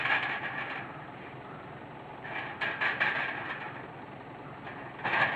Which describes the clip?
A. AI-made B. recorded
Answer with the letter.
B